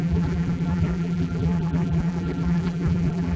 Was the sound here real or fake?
fake